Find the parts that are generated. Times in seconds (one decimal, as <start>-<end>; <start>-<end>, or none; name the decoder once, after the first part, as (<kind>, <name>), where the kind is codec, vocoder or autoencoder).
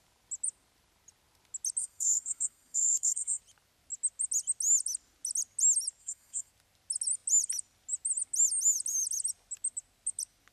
1.8-3.4 (codec, SNAC); 6.0-6.5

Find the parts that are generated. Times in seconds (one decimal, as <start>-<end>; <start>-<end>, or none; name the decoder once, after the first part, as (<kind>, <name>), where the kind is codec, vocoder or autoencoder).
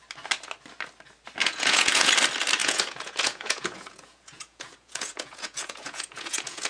1.4-2.1 (vocoder, Vocos); 2.6-6.7